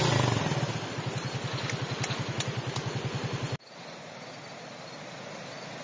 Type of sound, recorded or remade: recorded